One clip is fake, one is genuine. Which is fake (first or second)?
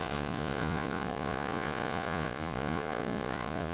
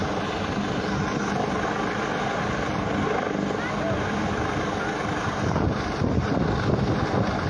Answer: first